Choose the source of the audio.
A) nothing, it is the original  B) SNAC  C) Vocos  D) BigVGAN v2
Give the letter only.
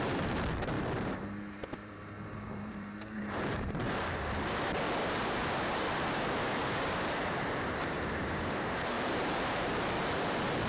D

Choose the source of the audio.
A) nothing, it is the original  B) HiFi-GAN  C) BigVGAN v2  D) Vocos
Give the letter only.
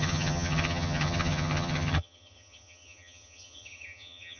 B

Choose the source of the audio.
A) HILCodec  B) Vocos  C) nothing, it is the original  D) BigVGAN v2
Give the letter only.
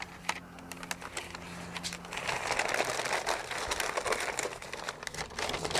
C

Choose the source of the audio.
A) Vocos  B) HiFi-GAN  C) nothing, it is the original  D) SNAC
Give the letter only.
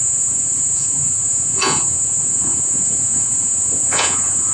A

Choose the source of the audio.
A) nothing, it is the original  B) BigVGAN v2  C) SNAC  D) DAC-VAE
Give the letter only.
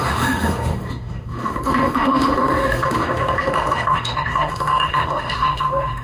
D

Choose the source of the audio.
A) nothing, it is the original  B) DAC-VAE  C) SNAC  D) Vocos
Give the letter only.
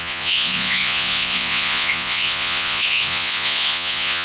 D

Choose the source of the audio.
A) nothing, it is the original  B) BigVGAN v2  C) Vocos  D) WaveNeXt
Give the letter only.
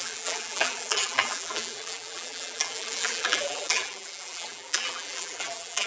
B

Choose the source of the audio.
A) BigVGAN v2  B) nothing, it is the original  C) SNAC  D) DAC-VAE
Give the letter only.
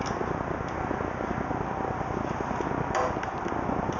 B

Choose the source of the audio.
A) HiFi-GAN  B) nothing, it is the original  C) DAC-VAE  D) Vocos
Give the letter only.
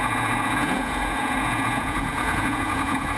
D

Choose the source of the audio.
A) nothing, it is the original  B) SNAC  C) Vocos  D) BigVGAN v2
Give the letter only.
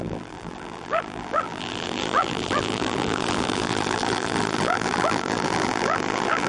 D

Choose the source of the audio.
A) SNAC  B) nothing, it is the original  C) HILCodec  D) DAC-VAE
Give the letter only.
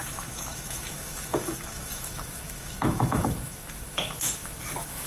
D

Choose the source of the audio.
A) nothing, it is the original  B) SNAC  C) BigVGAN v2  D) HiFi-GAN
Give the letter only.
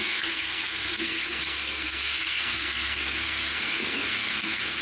B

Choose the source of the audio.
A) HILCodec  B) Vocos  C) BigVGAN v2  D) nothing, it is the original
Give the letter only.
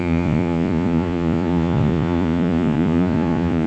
B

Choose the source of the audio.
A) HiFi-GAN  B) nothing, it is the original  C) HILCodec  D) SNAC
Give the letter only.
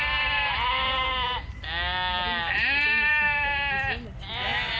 B